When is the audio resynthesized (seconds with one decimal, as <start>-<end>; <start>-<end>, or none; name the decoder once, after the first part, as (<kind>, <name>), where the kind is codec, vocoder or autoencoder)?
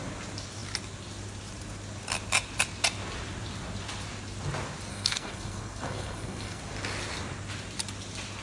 4.9-6.6 (codec, SNAC)